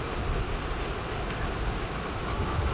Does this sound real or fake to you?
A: real